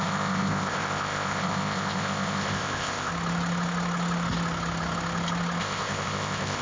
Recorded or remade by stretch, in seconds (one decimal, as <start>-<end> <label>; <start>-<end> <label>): 0.0-3.1 remade; 3.1-5.6 recorded; 5.6-6.6 remade